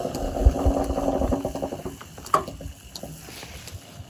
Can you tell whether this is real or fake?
real